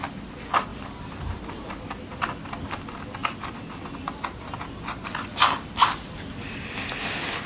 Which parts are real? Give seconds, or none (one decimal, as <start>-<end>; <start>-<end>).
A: 0.0-0.7; 1.6-7.5